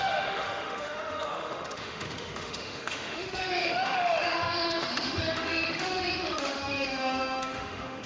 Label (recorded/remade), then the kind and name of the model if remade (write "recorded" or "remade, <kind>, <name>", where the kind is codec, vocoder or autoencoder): remade, autoencoder, DAC-VAE